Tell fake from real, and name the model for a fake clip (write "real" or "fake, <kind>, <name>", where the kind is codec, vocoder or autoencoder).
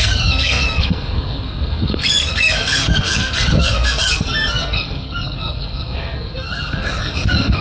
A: fake, codec, SNAC